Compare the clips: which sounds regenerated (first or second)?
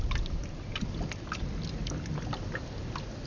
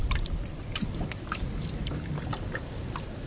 second